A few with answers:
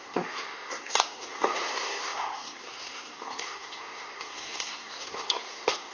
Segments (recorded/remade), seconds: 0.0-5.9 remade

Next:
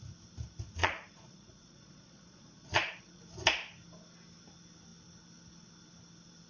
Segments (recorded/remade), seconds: 0.0-0.8 recorded; 0.8-3.2 remade; 3.2-6.5 recorded

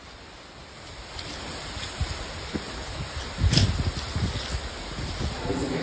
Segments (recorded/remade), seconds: 0.0-5.8 recorded

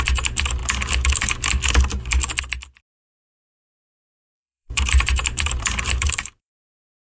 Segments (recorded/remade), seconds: 0.0-4.2 recorded; 4.2-6.5 remade; 6.5-7.2 recorded

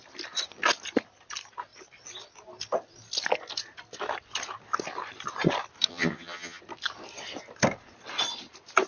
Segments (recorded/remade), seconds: 0.0-5.9 recorded; 5.9-6.6 remade; 6.6-8.9 recorded

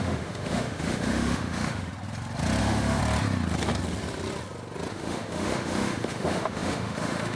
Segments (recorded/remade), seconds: 0.0-1.9 remade; 1.9-2.6 recorded; 2.6-3.0 remade; 3.0-4.9 recorded; 4.9-7.4 remade

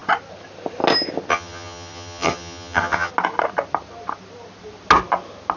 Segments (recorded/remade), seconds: 0.0-1.3 recorded; 1.3-3.1 remade; 3.1-5.6 recorded